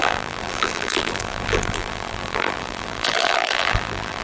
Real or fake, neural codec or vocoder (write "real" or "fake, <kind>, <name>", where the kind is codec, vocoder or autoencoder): fake, vocoder, BigVGAN v2